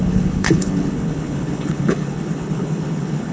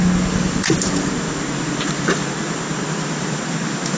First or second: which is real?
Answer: second